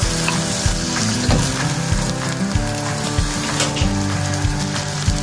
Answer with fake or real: real